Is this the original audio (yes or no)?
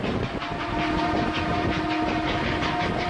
yes